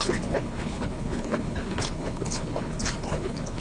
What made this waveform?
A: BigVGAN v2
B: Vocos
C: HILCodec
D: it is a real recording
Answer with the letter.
C